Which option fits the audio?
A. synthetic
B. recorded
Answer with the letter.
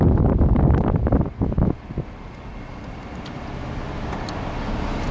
B